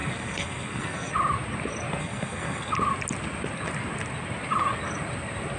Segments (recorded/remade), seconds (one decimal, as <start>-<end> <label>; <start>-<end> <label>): 0.0-1.1 remade; 1.1-2.0 recorded; 2.0-2.7 remade; 2.7-5.6 recorded